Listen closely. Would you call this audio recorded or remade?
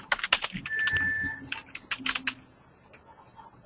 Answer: recorded